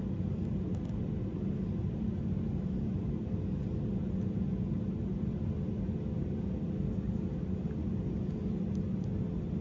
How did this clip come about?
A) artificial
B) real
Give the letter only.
B